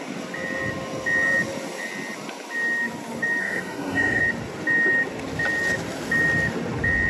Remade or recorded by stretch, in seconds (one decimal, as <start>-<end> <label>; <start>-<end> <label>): 0.0-3.4 recorded; 3.4-4.2 remade; 4.2-7.1 recorded